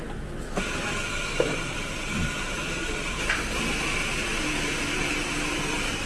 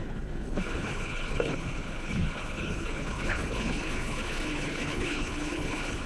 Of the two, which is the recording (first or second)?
first